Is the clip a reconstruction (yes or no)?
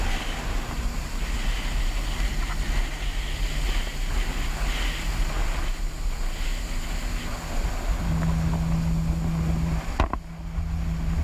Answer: no